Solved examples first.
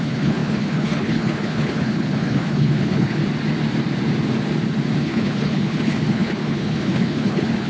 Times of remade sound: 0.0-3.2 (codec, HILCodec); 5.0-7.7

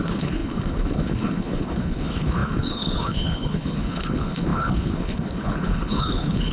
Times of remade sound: 0.0-6.5 (codec, HILCodec)

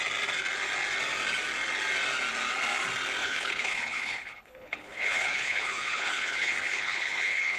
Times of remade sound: 3.2-7.6 (codec, HILCodec)

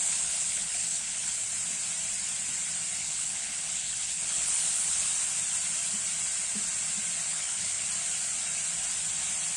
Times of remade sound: 0.0-1.5 (codec, HILCodec); 3.0-5.1; 7.3-7.8

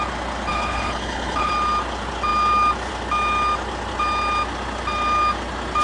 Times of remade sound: 0.5-1.5 (codec, HILCodec)

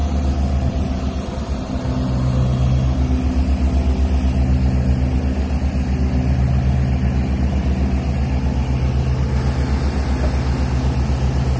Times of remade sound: none

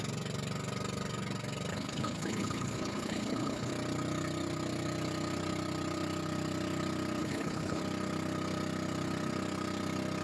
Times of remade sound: 1.7-3.7 (codec, HILCodec); 7.2-7.8